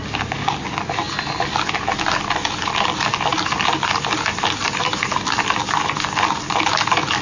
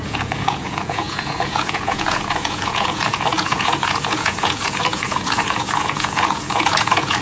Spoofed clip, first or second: second